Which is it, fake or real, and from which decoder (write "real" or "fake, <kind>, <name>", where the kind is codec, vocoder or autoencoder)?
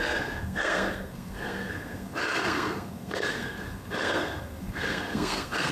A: fake, codec, SNAC